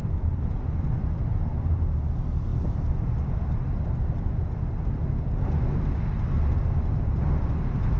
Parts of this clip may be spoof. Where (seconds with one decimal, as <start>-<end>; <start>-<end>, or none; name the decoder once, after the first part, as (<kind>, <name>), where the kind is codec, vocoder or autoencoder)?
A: 0.0-1.5 (vocoder, BigVGAN v2)